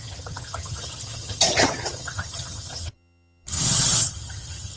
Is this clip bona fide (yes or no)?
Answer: no